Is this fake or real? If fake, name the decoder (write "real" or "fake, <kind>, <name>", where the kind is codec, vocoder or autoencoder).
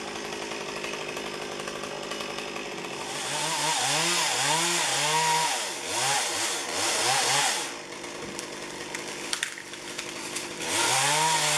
real